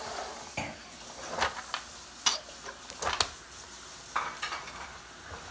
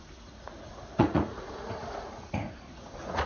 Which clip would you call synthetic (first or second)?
second